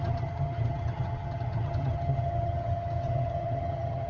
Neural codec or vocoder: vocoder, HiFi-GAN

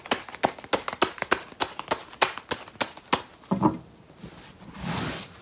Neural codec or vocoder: none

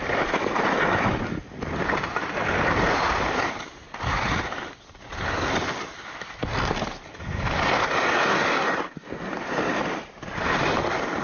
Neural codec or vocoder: none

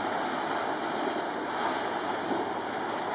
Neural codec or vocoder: none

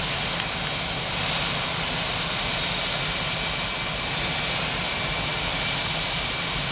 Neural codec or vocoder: none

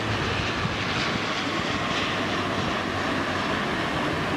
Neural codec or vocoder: none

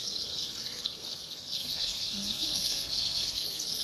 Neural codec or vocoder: codec, SNAC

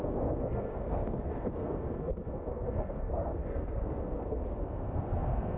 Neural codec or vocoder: codec, SNAC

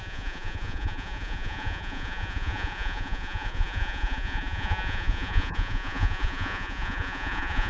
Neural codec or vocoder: vocoder, Vocos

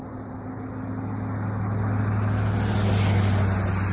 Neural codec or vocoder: none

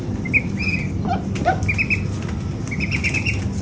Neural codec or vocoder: none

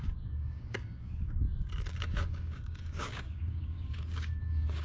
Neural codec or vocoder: codec, DAC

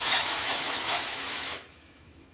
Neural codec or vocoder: autoencoder, DAC-VAE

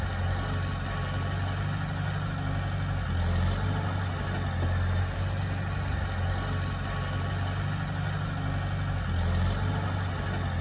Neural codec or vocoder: none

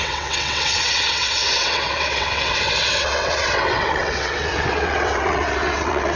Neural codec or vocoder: vocoder, WaveNeXt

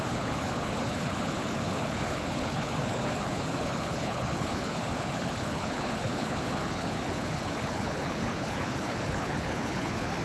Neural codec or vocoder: codec, HILCodec